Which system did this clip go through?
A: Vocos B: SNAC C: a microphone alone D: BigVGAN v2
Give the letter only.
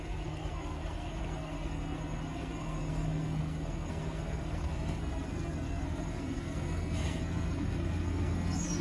B